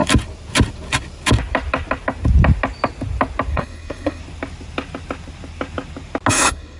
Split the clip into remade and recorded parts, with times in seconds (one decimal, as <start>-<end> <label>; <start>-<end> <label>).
0.0-3.5 recorded; 3.5-4.2 remade; 4.2-6.3 recorded; 6.3-6.8 remade